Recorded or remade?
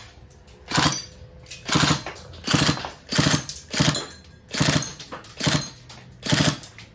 recorded